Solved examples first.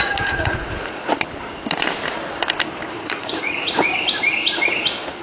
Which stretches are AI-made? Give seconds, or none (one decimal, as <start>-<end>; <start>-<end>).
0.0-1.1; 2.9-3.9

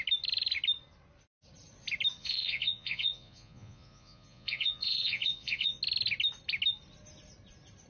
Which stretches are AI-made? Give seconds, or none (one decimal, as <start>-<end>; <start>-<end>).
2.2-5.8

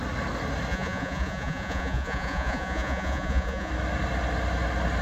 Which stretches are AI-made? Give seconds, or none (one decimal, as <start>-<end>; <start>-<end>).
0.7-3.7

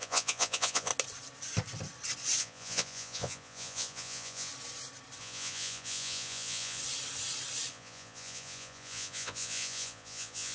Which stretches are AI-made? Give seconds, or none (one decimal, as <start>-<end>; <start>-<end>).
0.0-0.9; 2.4-4.5; 5.2-6.8; 7.7-10.5

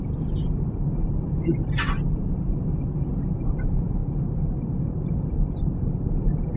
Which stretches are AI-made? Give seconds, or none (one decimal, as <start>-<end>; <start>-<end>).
none

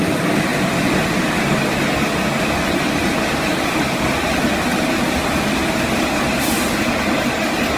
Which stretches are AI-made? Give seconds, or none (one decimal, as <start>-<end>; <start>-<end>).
none

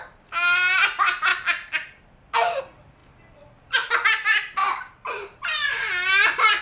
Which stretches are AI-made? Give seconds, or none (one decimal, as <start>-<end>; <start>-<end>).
none

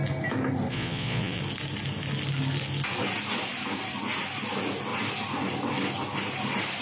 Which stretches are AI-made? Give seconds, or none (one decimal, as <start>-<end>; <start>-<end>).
0.7-1.4